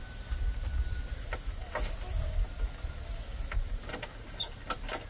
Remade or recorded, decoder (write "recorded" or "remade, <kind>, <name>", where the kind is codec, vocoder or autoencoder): recorded